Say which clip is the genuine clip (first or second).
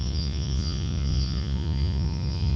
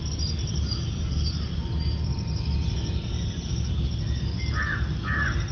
second